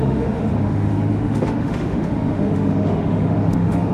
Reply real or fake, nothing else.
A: fake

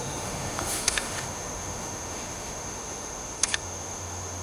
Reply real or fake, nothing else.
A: fake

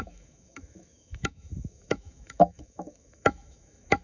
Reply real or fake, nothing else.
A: fake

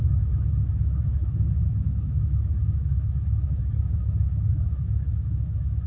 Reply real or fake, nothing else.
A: fake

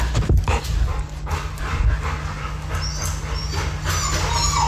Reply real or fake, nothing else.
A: real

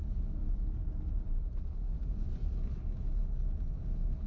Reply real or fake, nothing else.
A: real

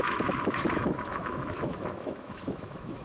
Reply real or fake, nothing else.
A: fake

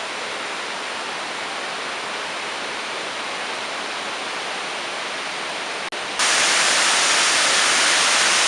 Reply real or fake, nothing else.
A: real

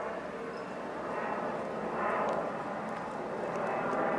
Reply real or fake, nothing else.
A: real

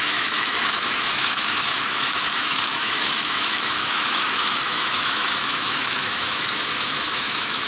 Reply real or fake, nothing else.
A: fake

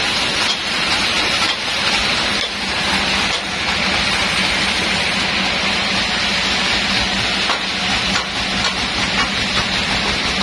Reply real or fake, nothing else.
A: real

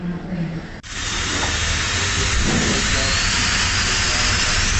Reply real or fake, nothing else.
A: real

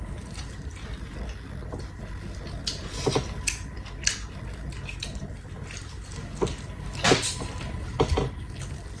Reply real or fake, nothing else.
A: real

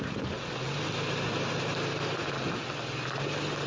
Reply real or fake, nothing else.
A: real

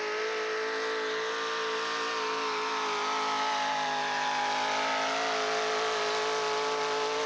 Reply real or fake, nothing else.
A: real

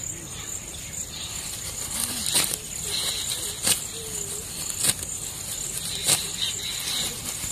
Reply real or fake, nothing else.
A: real